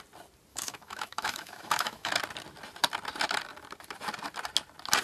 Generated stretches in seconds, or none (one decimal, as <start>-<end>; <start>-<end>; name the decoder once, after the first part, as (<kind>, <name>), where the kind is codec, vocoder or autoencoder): 0.5-2.1 (autoencoder, DAC-VAE)